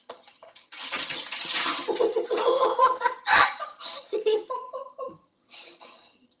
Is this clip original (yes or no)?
no